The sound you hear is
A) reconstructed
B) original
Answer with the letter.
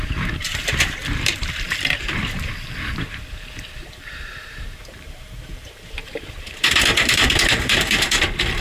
A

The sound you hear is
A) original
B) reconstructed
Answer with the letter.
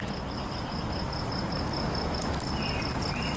A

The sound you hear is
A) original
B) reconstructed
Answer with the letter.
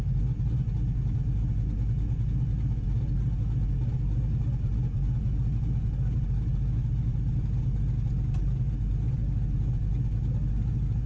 A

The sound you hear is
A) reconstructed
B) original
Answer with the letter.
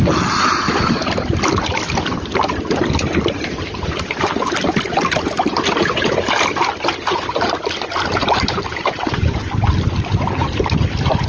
B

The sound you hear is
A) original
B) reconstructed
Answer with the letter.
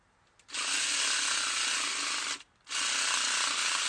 A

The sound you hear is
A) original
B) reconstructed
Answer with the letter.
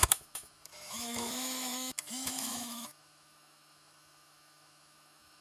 B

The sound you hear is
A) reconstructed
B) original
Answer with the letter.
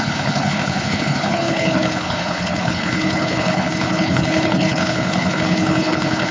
A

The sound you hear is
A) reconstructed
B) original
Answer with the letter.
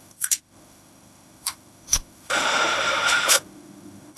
A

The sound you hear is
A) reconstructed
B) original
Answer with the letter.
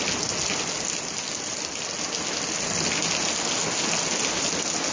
B